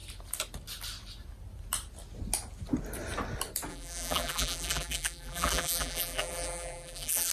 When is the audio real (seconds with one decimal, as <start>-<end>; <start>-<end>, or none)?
0.0-3.7